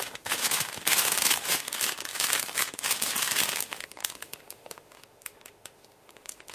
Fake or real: fake